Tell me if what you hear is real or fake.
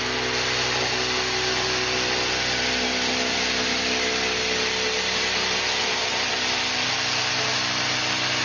real